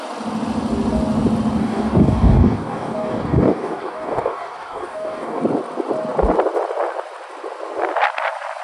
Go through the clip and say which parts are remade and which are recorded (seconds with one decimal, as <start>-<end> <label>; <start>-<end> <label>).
0.0-1.6 recorded; 1.6-5.4 remade; 5.4-8.6 recorded